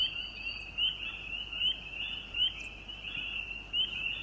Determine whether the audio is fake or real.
real